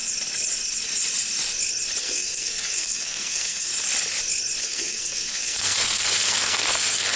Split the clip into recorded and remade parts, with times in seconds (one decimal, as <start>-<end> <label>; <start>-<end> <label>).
0.0-2.0 recorded; 2.0-3.7 remade; 3.7-4.6 recorded; 4.6-7.2 remade